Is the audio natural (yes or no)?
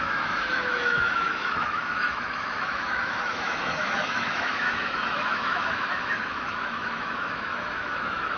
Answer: no